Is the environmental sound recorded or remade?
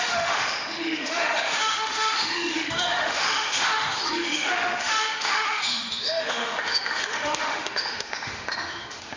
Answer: remade